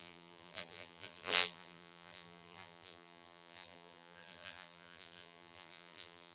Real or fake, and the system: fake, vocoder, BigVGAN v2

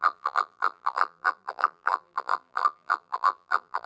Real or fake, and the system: fake, vocoder, BigVGAN v2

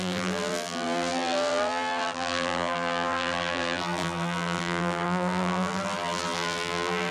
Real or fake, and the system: fake, vocoder, BigVGAN v2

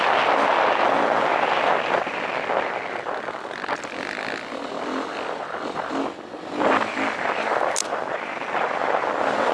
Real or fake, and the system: real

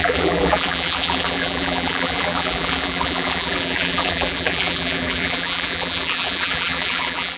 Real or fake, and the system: fake, vocoder, BigVGAN v2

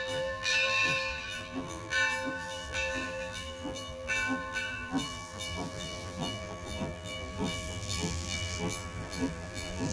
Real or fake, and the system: fake, vocoder, BigVGAN v2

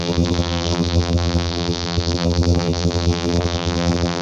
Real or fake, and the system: fake, vocoder, BigVGAN v2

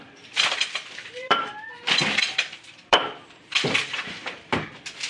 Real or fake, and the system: fake, vocoder, BigVGAN v2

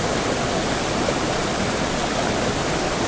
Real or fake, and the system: real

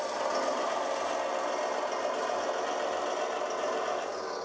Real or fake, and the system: real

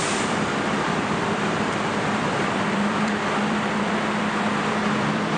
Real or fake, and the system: fake, vocoder, BigVGAN v2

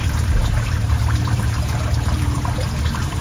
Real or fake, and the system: fake, vocoder, BigVGAN v2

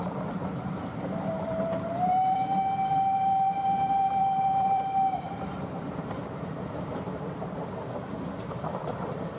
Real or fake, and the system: fake, vocoder, BigVGAN v2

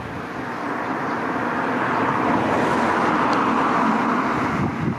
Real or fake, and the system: real